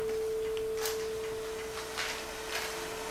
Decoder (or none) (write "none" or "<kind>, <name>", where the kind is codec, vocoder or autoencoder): none